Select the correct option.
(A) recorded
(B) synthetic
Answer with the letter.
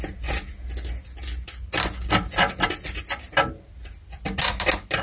A